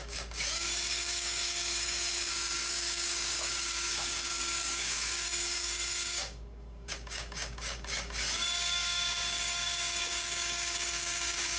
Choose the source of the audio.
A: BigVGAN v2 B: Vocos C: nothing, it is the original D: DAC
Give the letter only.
D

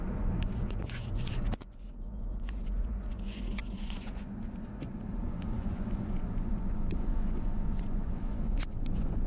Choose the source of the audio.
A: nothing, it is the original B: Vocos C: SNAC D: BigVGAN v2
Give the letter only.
B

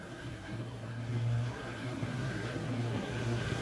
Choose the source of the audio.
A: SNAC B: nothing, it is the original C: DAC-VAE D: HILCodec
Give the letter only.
A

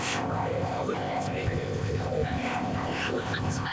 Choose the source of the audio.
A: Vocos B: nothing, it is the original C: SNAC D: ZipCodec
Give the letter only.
D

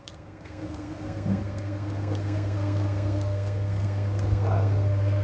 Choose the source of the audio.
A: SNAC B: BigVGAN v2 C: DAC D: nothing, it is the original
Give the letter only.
A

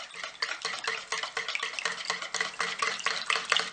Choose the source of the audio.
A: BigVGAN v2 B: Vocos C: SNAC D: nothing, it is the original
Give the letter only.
D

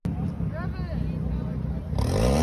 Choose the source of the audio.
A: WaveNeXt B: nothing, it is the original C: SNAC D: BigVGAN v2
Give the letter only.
B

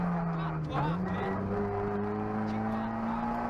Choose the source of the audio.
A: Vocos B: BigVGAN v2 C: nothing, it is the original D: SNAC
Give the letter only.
C